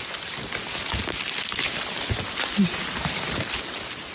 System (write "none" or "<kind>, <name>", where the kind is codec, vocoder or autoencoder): none